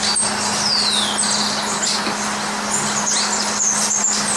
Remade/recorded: recorded